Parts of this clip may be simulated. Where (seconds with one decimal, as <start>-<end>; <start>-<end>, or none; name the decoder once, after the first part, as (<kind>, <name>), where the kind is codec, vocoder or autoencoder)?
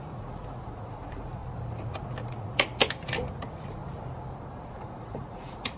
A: 0.0-1.4 (vocoder, Vocos); 2.2-2.7; 3.3-3.8; 4.7-5.8